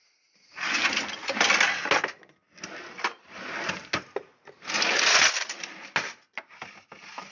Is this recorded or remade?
recorded